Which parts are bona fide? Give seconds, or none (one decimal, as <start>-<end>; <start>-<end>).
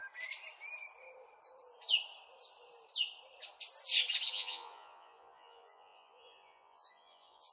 0.0-4.3